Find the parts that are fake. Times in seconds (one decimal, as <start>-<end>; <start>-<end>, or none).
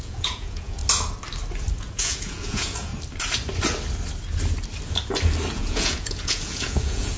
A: 0.0-0.8; 1.8-2.9; 5.5-7.2